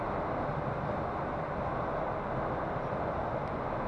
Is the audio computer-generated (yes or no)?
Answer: no